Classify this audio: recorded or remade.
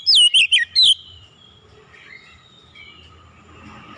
recorded